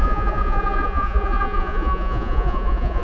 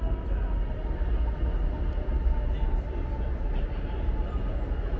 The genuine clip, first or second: second